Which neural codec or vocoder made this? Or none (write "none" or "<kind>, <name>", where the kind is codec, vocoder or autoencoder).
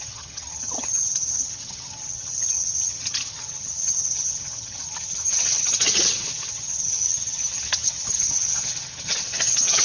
vocoder, HiFi-GAN